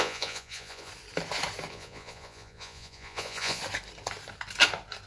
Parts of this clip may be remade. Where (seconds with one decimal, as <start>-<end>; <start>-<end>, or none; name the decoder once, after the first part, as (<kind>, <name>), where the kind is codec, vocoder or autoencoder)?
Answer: 0.0-0.9 (vocoder, Vocos); 1.7-3.6